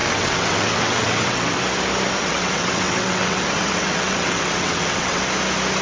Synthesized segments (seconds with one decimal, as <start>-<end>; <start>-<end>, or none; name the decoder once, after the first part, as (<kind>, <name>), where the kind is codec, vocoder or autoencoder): 0.0-1.6 (vocoder, WaveNeXt); 2.2-5.2

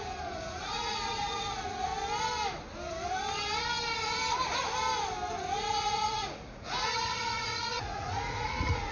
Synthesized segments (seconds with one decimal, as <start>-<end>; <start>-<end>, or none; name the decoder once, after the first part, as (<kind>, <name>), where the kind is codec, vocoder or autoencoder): 0.0-1.9 (vocoder, Vocos); 5.4-8.9

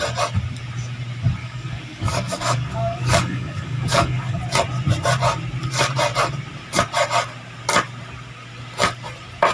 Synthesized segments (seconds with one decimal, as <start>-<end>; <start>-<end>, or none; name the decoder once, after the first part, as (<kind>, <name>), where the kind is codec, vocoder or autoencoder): 1.4-4.4 (codec, DAC)

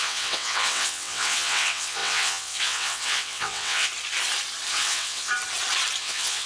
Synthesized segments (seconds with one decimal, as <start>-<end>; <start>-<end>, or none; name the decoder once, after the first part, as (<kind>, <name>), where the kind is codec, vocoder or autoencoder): 0.0-3.9 (vocoder, WaveNeXt); 4.7-5.3; 6.0-6.5

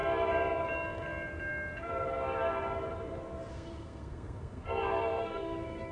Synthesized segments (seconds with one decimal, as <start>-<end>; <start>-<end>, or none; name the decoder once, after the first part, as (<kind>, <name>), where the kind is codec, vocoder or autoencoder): 3.5-5.9 (codec, SNAC)

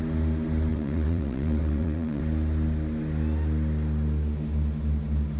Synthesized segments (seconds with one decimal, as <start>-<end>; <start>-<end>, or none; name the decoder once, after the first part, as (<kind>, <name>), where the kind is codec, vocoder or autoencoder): 0.7-2.2 (vocoder, WaveNeXt)